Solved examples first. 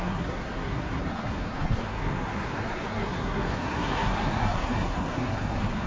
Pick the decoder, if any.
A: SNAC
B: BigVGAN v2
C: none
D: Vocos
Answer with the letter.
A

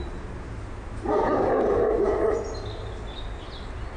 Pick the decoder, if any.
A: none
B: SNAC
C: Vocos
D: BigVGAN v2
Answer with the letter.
A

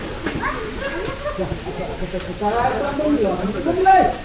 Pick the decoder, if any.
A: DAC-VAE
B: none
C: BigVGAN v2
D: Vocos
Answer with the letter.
C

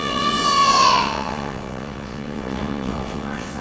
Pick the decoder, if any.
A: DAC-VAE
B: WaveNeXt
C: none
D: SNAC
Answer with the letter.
B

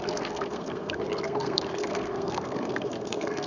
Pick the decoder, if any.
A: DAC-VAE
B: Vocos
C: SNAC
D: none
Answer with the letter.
C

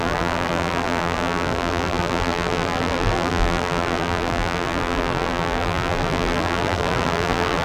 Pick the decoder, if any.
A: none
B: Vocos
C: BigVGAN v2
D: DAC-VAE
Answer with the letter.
C